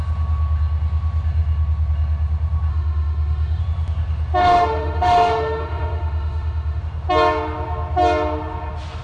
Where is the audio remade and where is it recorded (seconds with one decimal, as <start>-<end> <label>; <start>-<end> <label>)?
0.0-2.7 recorded; 2.7-3.6 remade; 3.6-4.4 recorded; 4.4-6.8 remade; 6.8-9.0 recorded